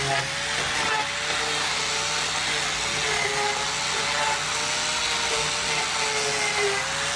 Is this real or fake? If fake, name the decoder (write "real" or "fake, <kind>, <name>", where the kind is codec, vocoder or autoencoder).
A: real